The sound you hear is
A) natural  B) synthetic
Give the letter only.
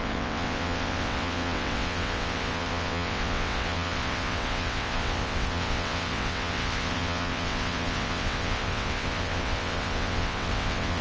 B